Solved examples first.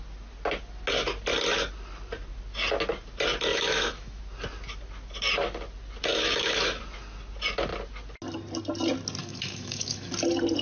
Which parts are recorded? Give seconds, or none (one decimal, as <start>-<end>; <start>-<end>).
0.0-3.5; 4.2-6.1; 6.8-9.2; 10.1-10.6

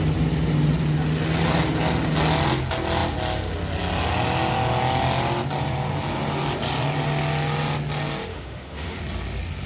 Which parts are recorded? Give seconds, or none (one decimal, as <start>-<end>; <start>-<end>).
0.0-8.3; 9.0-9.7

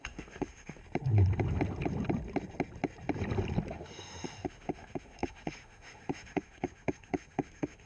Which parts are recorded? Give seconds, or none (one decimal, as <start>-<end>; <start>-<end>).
0.8-3.7

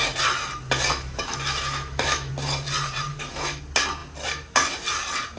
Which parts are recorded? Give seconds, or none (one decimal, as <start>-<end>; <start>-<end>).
0.0-0.9; 2.3-3.1; 3.6-5.4